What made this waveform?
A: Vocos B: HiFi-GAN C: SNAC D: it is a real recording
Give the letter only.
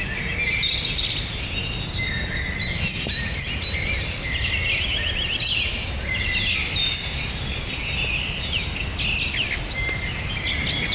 D